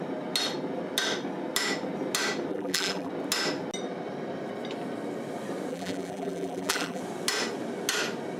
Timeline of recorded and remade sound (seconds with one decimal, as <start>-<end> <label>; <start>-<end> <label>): 0.0-2.5 recorded; 2.5-3.1 remade; 3.1-5.7 recorded; 5.7-7.0 remade; 7.0-8.4 recorded